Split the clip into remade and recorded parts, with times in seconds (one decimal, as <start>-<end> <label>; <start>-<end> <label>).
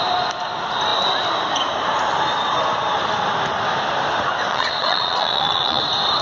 0.0-4.5 recorded; 4.5-5.8 remade; 5.8-6.2 recorded